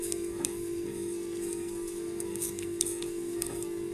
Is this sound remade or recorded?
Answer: remade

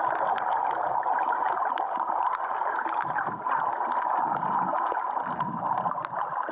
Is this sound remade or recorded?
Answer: recorded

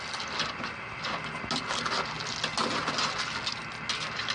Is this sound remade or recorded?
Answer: recorded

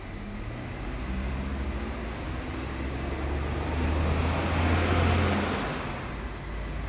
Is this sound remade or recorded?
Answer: recorded